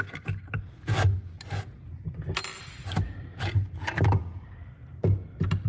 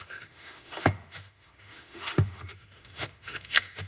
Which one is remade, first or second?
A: second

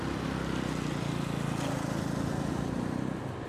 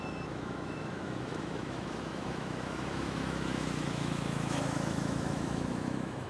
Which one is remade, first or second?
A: second